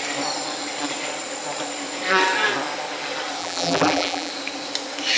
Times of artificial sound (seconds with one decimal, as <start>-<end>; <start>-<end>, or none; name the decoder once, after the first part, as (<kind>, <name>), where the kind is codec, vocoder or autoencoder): 3.4-4.3 (vocoder, BigVGAN v2)

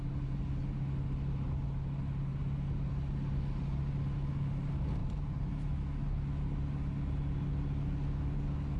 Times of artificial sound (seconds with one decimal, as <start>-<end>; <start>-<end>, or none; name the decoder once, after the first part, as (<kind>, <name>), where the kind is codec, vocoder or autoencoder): 5.0-5.7 (vocoder, BigVGAN v2)